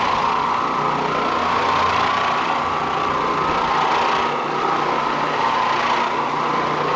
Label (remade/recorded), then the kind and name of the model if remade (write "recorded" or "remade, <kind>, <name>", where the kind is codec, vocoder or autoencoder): recorded